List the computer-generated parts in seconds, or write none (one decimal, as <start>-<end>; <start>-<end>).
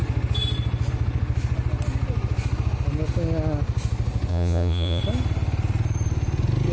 4.3-5.0